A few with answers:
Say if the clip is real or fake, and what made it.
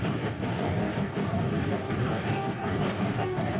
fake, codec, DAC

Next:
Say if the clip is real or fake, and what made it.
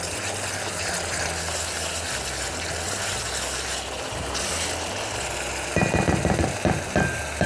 real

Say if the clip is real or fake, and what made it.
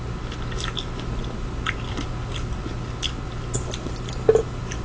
real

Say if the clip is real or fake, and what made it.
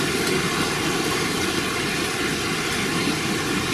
real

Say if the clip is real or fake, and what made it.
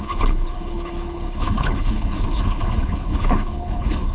fake, codec, HILCodec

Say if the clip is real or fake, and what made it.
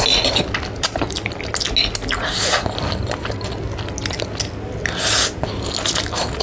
real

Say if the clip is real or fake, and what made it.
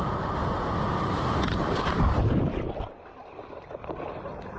real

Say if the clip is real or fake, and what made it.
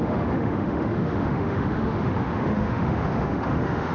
fake, autoencoder, DAC-VAE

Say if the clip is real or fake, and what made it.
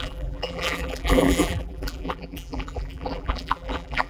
fake, vocoder, BigVGAN v2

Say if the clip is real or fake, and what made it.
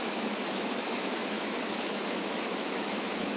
fake, autoencoder, DAC-VAE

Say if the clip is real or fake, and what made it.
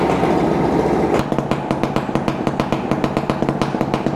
real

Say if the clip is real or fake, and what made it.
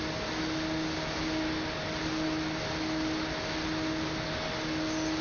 real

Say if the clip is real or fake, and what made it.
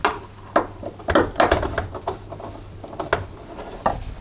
real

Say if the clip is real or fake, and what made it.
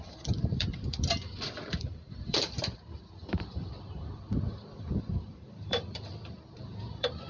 fake, vocoder, BigVGAN v2